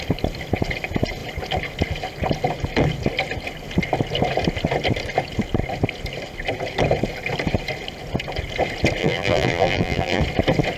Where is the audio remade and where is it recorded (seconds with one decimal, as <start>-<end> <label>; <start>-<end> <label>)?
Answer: 0.0-9.0 recorded; 9.0-10.2 remade; 10.2-10.8 recorded